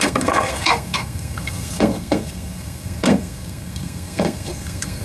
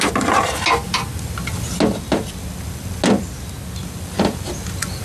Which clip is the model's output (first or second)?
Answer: first